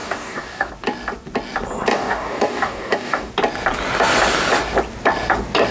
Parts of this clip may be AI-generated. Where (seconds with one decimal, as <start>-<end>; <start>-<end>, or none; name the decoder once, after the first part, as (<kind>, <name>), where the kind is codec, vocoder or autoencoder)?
0.0-0.7 (codec, DAC); 1.9-3.3